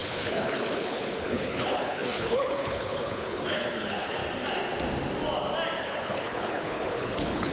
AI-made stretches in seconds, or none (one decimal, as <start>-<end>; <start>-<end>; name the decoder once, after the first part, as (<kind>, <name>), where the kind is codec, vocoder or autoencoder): 0.0-4.2 (codec, HILCodec); 5.8-7.5